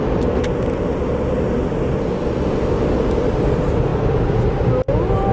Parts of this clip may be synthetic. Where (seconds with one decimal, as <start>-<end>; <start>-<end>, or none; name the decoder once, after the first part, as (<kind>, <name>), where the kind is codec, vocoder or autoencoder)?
none